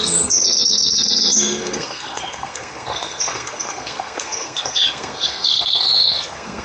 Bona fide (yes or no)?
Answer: no